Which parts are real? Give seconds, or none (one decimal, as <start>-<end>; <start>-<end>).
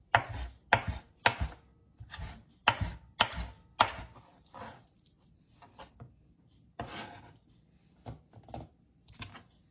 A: 0.0-9.7